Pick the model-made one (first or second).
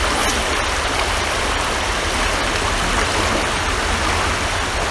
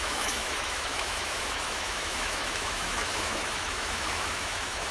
second